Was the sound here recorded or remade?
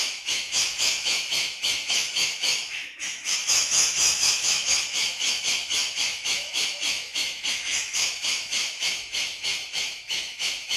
remade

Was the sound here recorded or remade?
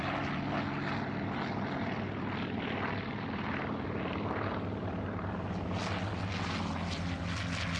recorded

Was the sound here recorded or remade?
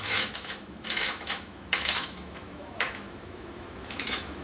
remade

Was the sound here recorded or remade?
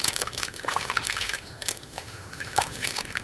remade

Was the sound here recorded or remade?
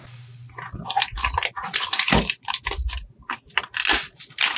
recorded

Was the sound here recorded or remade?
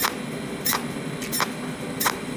recorded